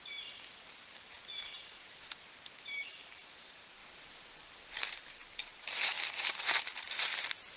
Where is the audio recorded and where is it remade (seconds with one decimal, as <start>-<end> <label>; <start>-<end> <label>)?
0.0-5.4 remade; 5.4-6.3 recorded; 6.3-7.6 remade